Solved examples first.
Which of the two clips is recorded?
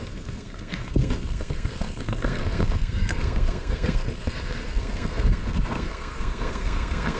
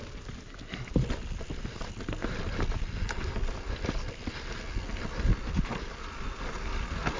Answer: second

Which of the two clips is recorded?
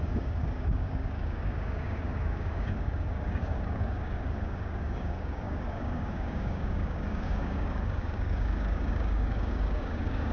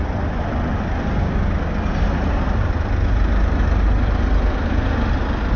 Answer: second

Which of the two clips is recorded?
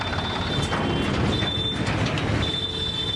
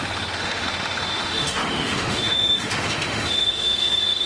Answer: first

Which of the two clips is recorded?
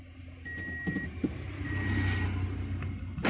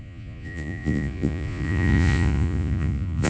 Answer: first